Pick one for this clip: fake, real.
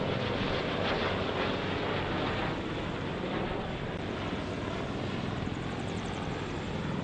real